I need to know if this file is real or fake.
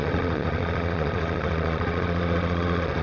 fake